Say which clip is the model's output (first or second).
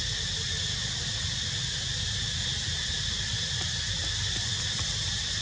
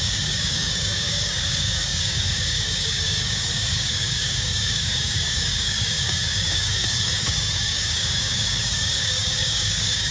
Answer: second